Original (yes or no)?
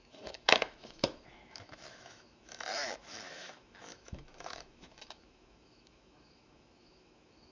no